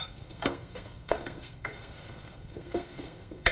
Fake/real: fake